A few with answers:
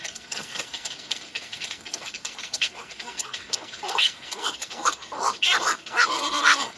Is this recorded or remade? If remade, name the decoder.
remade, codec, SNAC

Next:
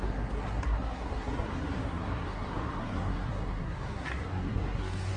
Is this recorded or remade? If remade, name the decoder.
remade, codec, SNAC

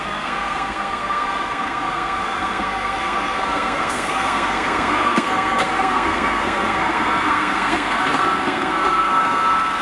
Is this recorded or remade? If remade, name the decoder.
remade, codec, SNAC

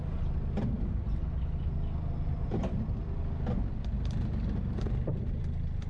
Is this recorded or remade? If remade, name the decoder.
recorded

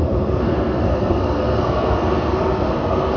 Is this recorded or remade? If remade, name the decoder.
remade, codec, SNAC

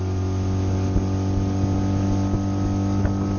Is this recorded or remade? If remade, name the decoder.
recorded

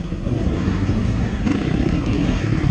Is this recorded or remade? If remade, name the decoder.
remade, codec, SNAC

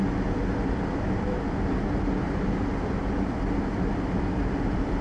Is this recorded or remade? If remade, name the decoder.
recorded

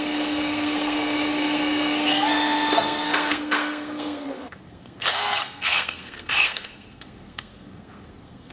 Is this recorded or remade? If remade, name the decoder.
remade, codec, SNAC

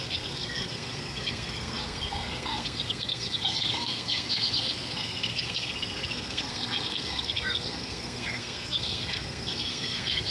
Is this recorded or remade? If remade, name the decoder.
remade, codec, SNAC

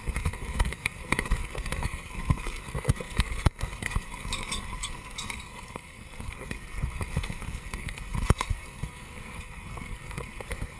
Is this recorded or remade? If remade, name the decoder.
remade, codec, SNAC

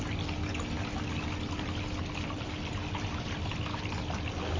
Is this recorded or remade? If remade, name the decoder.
recorded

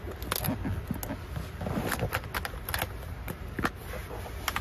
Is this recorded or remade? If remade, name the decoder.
recorded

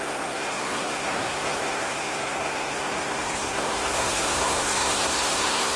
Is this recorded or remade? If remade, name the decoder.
remade, codec, SNAC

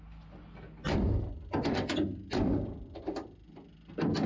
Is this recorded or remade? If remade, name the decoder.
recorded